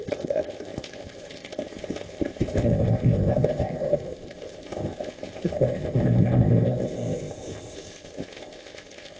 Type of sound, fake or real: fake